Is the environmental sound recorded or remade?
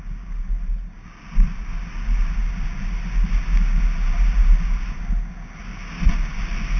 recorded